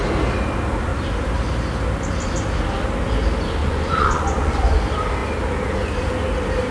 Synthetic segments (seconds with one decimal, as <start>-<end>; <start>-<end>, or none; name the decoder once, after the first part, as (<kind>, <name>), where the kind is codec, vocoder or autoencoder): 3.6-4.8 (vocoder, Vocos)